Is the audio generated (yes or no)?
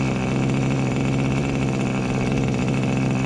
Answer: no